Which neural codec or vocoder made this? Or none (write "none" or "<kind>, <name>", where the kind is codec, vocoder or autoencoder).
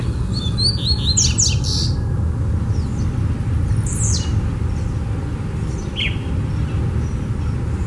none